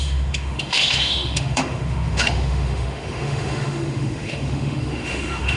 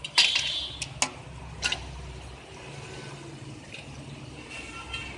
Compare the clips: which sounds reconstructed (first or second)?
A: first